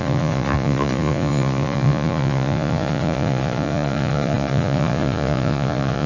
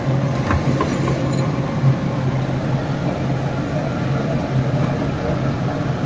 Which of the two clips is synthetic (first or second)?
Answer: first